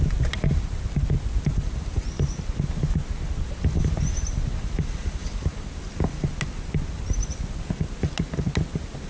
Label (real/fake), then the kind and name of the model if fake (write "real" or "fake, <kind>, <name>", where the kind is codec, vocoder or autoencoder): real